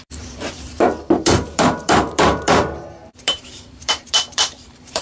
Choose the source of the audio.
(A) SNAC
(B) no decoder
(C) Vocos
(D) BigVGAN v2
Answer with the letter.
D